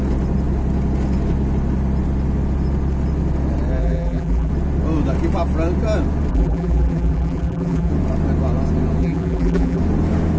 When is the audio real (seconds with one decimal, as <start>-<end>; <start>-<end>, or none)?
0.0-3.8; 4.5-6.3; 7.9-9.0; 9.8-10.4